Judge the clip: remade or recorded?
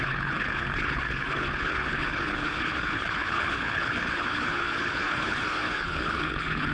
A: remade